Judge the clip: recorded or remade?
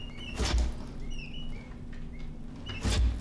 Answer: recorded